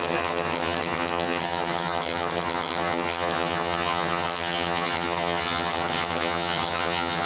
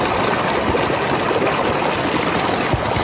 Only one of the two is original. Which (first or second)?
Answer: second